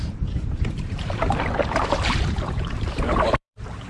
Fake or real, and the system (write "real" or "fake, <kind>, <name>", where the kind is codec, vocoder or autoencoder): fake, vocoder, BigVGAN v2